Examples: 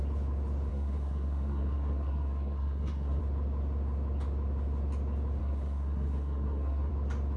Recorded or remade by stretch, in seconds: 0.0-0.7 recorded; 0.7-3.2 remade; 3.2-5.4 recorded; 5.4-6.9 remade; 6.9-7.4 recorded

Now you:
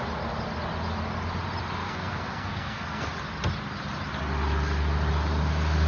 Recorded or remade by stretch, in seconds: 0.0-1.8 recorded; 1.8-3.1 remade; 3.1-5.9 recorded

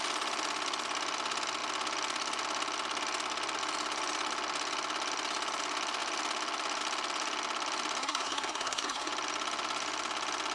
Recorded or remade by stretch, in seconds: 0.0-8.0 recorded; 8.0-9.1 remade; 9.1-10.5 recorded